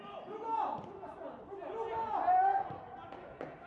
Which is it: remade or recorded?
recorded